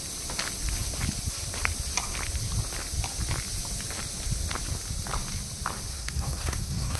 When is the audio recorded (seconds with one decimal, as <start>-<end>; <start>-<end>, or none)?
0.0-5.9